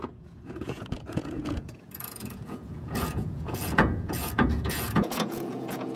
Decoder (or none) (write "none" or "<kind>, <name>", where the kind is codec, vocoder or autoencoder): vocoder, Vocos